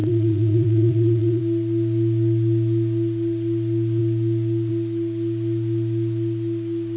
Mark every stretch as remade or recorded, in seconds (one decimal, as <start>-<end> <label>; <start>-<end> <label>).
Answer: 0.0-1.4 remade; 1.4-7.0 recorded